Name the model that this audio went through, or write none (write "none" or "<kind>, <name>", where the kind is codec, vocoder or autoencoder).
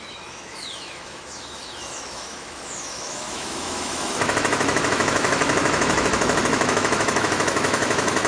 autoencoder, DAC-VAE